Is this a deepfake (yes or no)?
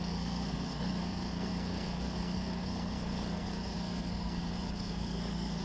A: yes